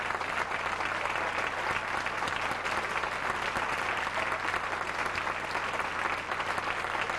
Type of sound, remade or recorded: recorded